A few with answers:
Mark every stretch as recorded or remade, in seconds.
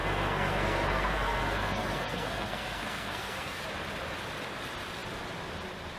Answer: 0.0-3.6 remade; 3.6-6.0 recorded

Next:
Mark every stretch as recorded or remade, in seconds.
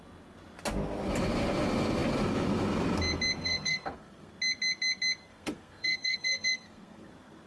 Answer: 0.0-3.4 recorded; 3.4-4.3 remade; 4.3-5.3 recorded; 5.3-7.1 remade; 7.1-7.5 recorded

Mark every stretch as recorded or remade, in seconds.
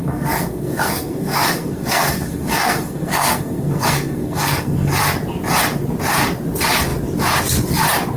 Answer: 0.0-4.9 remade; 4.9-8.2 recorded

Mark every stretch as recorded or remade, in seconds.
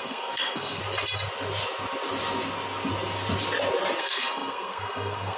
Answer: 0.0-0.8 remade; 0.8-4.0 recorded; 4.0-5.4 remade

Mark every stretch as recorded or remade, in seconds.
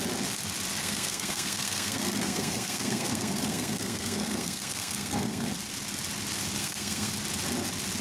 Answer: 0.0-0.8 recorded; 0.8-5.5 remade; 5.5-6.6 recorded; 6.6-7.1 remade; 7.1-8.0 recorded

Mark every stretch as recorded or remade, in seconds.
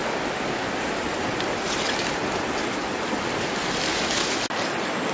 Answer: 0.0-5.1 recorded